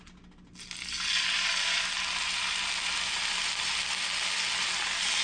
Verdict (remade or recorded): recorded